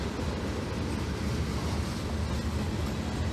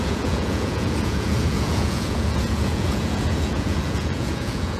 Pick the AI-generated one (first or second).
second